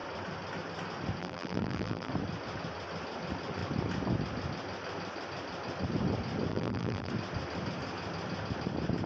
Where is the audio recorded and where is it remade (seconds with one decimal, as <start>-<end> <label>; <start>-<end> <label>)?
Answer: 0.0-1.2 recorded; 1.2-2.1 remade; 2.1-6.5 recorded; 6.5-7.1 remade; 7.1-9.1 recorded